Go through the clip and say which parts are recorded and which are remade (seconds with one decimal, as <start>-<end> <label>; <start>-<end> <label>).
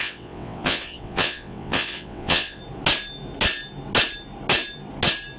0.0-2.6 remade; 2.6-5.4 recorded